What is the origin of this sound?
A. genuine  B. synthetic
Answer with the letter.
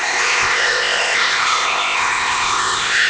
B